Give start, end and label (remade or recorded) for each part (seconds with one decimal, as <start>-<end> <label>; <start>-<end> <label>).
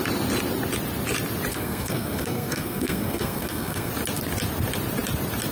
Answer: 0.0-1.5 recorded; 1.5-3.9 remade; 3.9-5.5 recorded